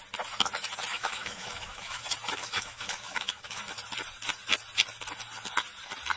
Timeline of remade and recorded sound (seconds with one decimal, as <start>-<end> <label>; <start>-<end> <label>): 0.0-0.9 recorded; 0.9-2.0 remade; 2.0-2.4 recorded; 2.4-3.6 remade; 3.6-6.2 recorded